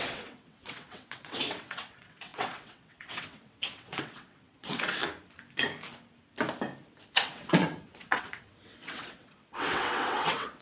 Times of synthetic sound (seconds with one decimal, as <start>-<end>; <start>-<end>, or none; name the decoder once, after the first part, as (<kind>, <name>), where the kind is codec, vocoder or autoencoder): 0.0-5.0 (vocoder, WaveNeXt); 7.1-10.6